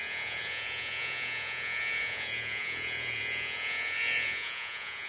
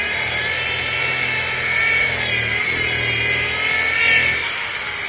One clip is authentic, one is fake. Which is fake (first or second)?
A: first